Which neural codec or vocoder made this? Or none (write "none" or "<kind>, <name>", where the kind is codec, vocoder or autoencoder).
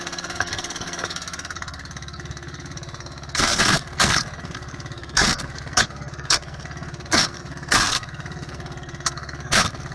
codec, SNAC